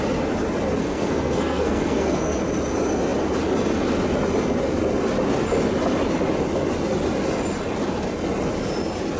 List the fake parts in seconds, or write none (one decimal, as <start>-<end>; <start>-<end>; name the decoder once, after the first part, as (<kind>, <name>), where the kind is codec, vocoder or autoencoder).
0.8-2.4 (codec, SNAC)